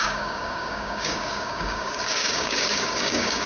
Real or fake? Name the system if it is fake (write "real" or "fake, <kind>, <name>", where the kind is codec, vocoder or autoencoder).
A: fake, codec, DAC